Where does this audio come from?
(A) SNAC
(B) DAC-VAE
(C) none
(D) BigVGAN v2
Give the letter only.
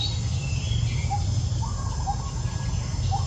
C